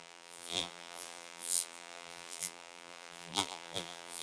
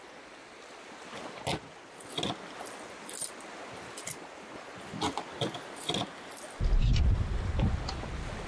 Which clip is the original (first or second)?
second